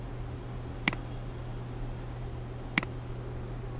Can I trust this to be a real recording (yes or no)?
yes